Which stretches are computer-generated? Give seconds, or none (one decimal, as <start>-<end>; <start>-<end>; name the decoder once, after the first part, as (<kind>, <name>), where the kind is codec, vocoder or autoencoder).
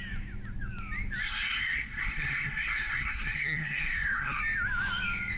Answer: 1.2-4.4 (codec, SNAC)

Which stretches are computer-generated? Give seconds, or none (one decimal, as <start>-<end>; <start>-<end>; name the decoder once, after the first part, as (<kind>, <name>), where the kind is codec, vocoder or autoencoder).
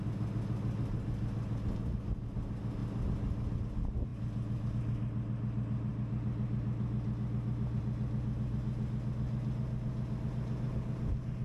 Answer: none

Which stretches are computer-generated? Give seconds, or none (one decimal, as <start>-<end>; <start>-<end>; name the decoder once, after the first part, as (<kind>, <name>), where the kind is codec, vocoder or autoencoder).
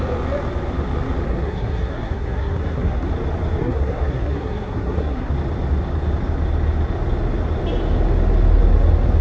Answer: 1.3-3.1 (codec, SNAC); 3.6-5.3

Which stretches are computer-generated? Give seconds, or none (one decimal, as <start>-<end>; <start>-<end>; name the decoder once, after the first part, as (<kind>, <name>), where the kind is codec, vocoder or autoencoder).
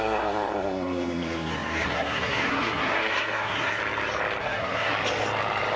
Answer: 0.0-3.8 (codec, SNAC); 4.4-4.9